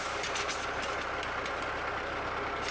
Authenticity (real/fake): real